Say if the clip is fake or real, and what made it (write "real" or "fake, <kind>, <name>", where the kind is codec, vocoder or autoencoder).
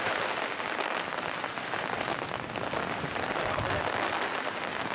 real